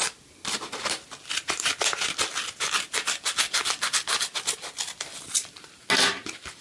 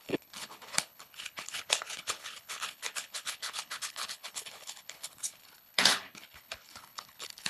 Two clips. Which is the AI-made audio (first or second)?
second